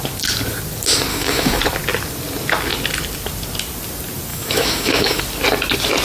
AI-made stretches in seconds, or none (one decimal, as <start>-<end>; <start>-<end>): 1.1-1.6; 4.3-5.2